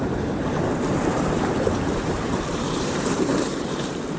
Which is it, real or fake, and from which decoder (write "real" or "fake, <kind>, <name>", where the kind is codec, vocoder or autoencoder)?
fake, vocoder, BigVGAN v2